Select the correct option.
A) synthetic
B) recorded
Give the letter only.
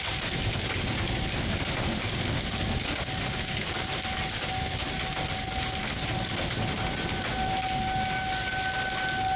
B